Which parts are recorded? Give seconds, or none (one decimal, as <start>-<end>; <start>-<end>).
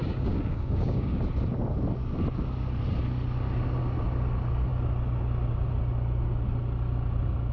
1.2-7.5